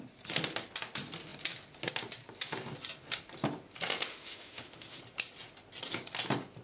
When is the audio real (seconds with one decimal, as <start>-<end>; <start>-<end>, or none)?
0.0-4.1; 5.0-6.6